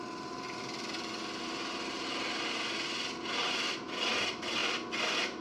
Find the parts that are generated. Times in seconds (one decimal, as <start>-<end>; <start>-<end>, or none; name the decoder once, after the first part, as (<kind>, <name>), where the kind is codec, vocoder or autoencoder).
0.0-0.6 (vocoder, BigVGAN v2); 3.8-4.6